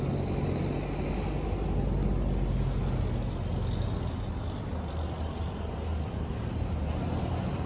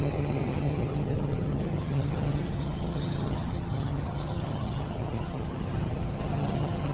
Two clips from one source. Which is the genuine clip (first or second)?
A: first